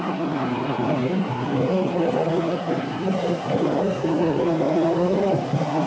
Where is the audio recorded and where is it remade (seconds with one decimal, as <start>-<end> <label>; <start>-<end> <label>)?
0.0-5.9 remade